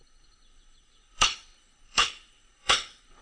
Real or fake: fake